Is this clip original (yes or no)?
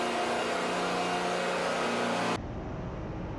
yes